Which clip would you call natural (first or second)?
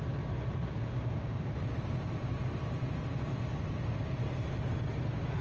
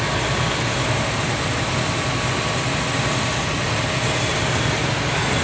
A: second